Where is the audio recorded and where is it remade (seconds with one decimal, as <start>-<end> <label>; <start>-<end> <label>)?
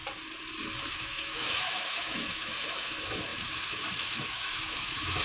0.0-0.9 recorded; 0.9-5.2 remade